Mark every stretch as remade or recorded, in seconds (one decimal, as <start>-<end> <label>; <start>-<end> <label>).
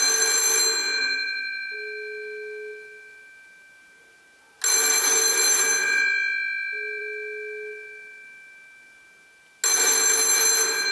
0.0-10.9 recorded